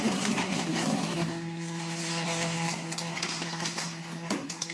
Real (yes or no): no